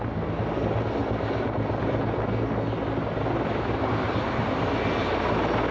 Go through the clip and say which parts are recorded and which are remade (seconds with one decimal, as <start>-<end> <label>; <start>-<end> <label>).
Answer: 0.0-5.7 recorded

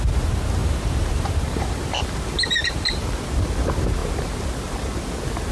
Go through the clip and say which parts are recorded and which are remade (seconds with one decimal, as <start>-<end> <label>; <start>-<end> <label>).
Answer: 0.0-0.6 recorded; 0.6-3.0 remade; 3.0-5.5 recorded

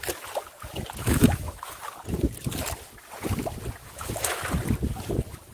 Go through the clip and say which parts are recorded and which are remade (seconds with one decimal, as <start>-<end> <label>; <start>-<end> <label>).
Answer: 0.0-1.0 recorded; 1.0-1.8 remade; 1.8-3.8 recorded; 3.8-4.4 remade; 4.4-5.5 recorded

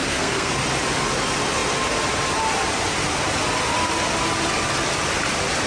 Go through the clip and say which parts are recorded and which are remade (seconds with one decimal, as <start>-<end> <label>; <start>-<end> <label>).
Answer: 0.0-0.5 remade; 0.5-5.7 recorded

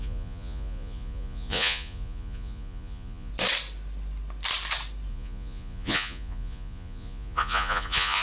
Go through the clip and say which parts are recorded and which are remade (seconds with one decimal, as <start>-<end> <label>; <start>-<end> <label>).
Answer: 0.0-3.3 remade; 3.3-5.1 recorded; 5.1-8.2 remade